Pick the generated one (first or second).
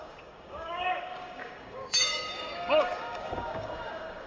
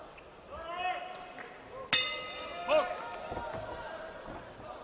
first